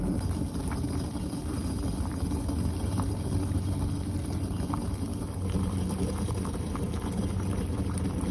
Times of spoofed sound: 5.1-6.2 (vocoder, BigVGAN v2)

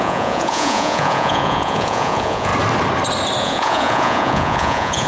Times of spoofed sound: 0.0-2.5 (vocoder, Vocos); 3.4-5.1

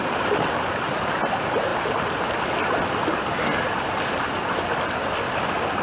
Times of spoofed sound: none

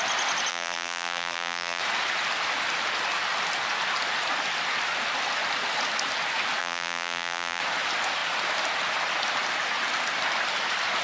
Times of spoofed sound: 0.5-1.8 (vocoder, BigVGAN v2); 6.6-7.6